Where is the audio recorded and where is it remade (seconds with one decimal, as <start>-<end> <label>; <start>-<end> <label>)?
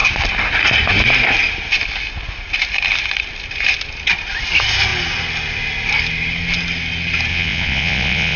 0.0-7.3 recorded; 7.3-8.4 remade